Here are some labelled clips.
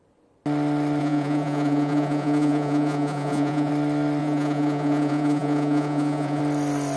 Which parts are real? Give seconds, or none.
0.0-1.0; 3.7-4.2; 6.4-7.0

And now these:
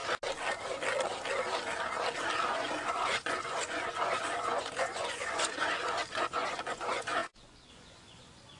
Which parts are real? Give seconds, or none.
0.0-2.5

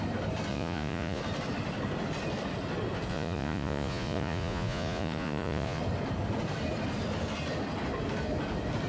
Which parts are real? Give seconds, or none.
0.0-0.5; 1.2-3.1; 5.8-8.9

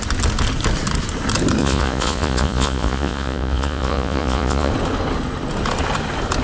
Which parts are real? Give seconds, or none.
0.0-1.6; 4.7-6.4

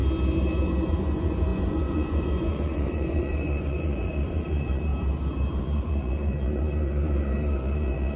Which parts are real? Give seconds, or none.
0.0-0.9; 4.9-5.6

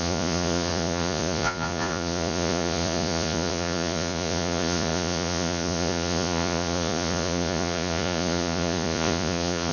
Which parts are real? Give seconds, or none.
none

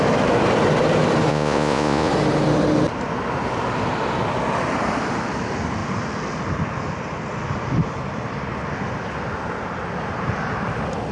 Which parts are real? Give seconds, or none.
0.0-1.3; 2.1-11.1

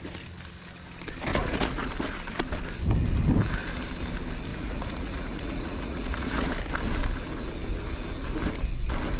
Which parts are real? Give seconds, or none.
0.0-1.3; 1.9-4.5; 6.5-9.2